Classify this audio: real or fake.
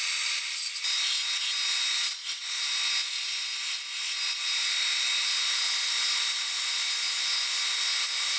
real